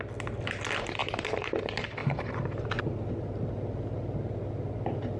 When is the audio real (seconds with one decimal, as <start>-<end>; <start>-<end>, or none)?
0.0-1.0; 1.5-2.0; 2.8-5.2